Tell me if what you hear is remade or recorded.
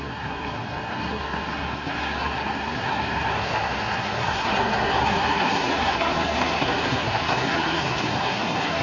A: remade